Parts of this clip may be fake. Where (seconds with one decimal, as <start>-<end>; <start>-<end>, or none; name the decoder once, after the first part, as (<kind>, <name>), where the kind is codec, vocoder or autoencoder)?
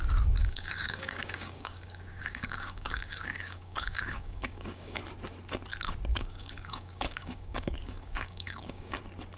0.4-5.0 (codec, DAC); 6.1-9.0